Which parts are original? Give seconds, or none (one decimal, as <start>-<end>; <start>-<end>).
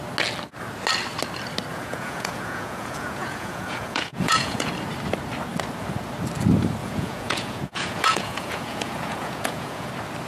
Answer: 0.0-1.7; 4.7-6.8; 9.9-10.3